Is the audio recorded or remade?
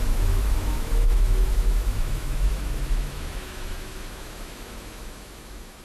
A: remade